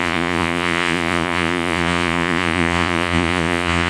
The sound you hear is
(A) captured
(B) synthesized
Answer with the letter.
B